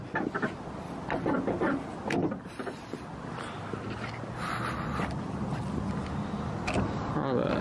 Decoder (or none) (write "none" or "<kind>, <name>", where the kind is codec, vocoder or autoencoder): none